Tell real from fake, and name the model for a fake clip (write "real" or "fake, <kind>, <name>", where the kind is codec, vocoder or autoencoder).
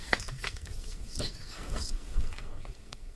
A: fake, codec, SNAC